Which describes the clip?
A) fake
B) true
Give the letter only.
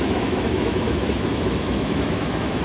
A